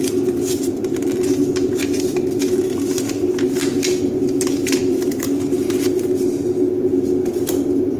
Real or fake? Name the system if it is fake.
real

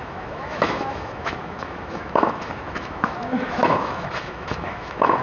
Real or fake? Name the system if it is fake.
fake, autoencoder, DAC-VAE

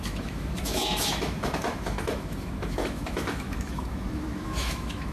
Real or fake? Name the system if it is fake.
fake, autoencoder, DAC-VAE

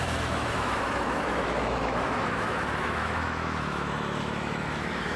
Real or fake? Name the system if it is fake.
fake, autoencoder, DAC-VAE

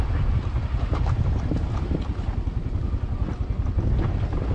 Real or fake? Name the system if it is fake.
real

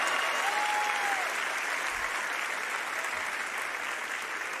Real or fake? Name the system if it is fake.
real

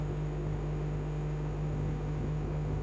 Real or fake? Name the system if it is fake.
fake, autoencoder, DAC-VAE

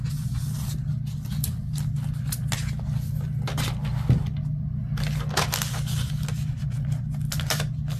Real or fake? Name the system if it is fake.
real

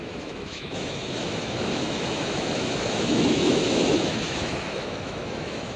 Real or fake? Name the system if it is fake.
fake, autoencoder, DAC-VAE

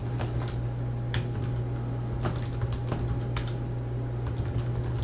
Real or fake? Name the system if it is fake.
real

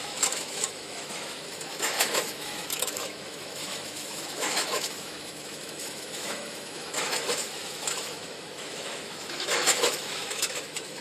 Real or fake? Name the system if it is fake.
fake, autoencoder, DAC-VAE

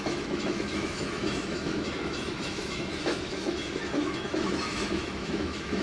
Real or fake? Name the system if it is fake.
fake, autoencoder, DAC-VAE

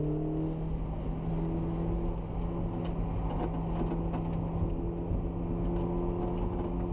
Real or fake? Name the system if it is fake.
real